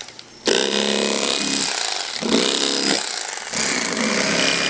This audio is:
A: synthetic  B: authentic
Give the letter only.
B